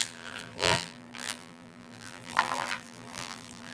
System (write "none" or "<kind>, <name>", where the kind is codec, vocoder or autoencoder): vocoder, BigVGAN v2